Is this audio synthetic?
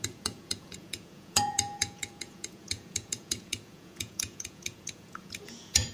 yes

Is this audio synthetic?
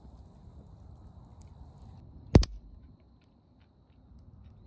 no